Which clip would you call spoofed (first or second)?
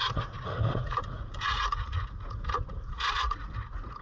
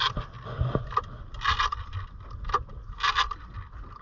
first